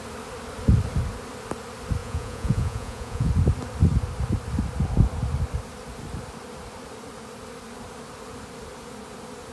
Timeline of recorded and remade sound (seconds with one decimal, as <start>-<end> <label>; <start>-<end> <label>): 0.0-2.0 recorded; 2.0-3.3 remade; 3.3-9.5 recorded